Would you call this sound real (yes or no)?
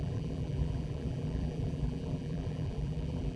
no